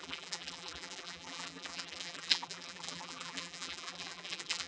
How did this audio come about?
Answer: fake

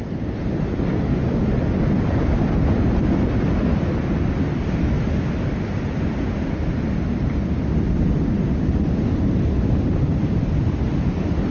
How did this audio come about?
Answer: real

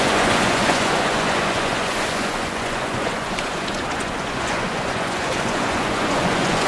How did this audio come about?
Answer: fake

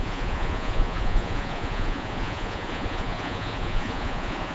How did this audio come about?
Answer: fake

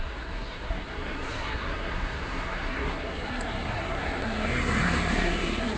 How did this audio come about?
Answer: fake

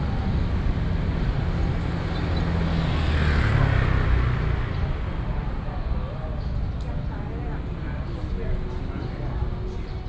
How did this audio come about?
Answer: real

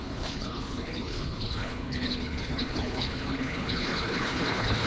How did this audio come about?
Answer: fake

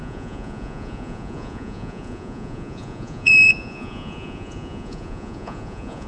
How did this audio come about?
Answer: fake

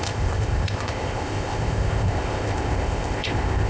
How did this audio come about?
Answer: fake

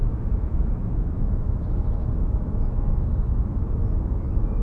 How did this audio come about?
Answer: fake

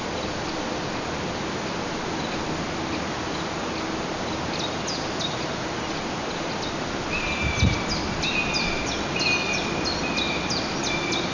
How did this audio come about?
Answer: real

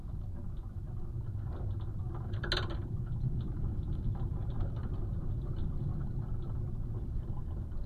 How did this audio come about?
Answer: real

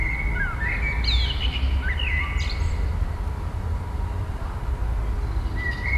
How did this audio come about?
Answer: real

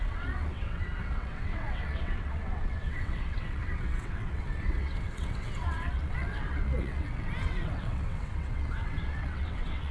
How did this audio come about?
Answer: fake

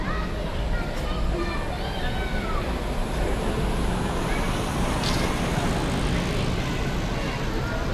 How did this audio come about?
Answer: real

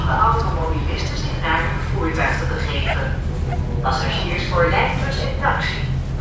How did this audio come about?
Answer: real